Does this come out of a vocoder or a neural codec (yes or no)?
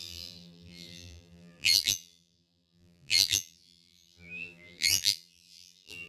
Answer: yes